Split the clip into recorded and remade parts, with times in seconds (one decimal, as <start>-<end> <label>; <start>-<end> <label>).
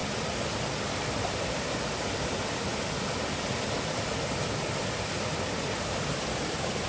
0.0-1.4 recorded; 1.4-2.7 remade; 2.7-3.8 recorded; 3.8-6.9 remade